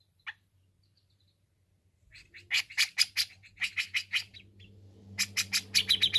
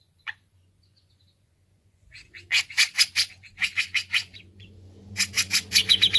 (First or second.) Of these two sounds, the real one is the first